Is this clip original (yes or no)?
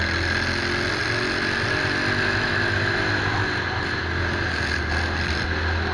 yes